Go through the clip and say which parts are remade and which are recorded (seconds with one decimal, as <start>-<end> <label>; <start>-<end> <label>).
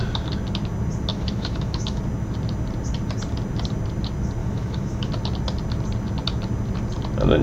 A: 0.0-1.1 recorded; 1.1-2.0 remade; 2.0-4.4 recorded; 4.4-5.1 remade; 5.1-7.4 recorded